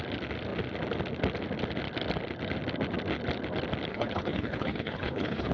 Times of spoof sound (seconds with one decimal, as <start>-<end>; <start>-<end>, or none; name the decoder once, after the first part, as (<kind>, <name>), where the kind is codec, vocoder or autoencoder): 3.9-5.5 (codec, HILCodec)